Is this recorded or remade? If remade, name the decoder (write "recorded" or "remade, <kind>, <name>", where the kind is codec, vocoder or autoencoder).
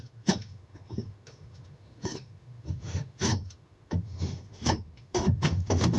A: remade, autoencoder, DAC-VAE